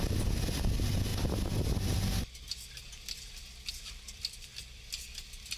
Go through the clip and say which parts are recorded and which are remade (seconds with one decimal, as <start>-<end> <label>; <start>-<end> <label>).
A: 0.0-1.1 remade; 1.1-3.7 recorded; 3.7-4.5 remade; 4.5-5.6 recorded